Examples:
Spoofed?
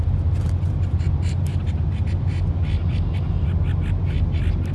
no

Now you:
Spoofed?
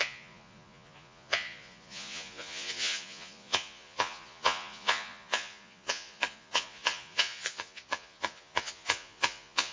yes